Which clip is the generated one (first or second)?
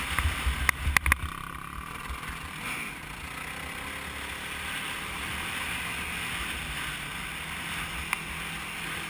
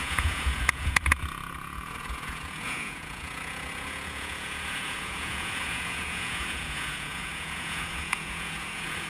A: second